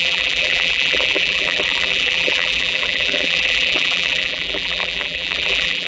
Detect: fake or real fake